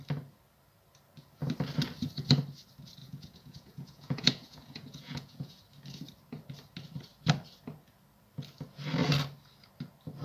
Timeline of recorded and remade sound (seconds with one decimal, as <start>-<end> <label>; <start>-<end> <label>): 0.0-3.0 recorded; 3.0-5.6 remade; 5.6-10.2 recorded